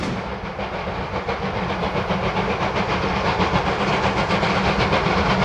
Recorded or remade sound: recorded